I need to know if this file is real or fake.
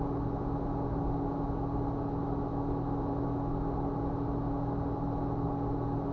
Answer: real